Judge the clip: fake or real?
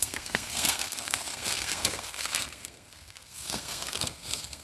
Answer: fake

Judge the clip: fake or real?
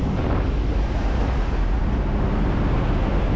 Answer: real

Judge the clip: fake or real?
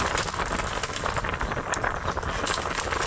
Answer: real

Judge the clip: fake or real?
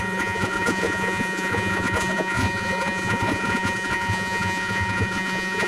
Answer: fake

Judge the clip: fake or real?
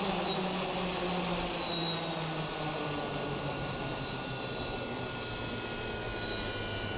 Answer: real